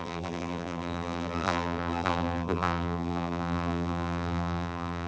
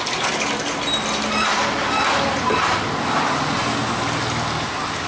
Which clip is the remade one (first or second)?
first